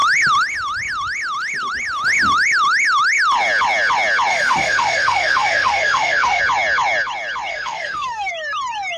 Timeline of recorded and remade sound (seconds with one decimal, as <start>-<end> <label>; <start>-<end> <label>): 0.0-4.3 recorded; 4.3-6.4 remade; 6.4-7.5 recorded; 7.5-8.3 remade; 8.3-9.0 recorded